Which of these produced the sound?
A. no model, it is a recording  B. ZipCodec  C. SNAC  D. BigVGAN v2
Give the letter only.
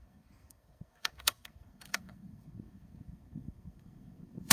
C